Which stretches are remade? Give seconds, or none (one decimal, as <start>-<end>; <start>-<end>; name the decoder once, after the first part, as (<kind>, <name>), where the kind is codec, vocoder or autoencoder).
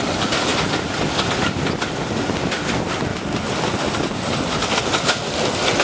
none